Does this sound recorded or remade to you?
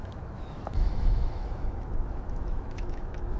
remade